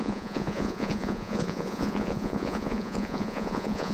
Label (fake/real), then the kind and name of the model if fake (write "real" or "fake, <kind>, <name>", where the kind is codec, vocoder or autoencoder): fake, vocoder, Vocos